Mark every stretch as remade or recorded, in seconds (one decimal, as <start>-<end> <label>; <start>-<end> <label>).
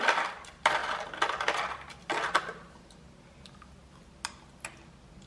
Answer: 0.0-5.3 recorded